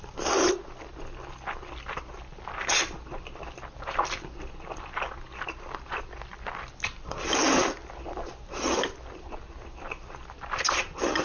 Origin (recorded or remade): recorded